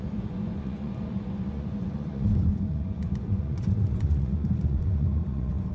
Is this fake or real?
fake